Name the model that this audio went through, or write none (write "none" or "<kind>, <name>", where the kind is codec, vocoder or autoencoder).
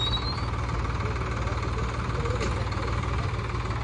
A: none